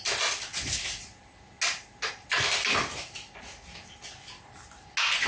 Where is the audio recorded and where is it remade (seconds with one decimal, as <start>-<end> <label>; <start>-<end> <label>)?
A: 0.0-5.3 recorded